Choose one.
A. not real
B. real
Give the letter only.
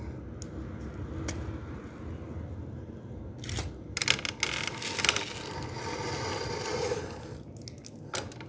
B